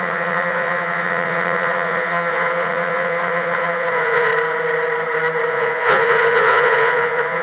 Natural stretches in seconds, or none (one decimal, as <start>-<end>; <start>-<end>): 4.3-5.5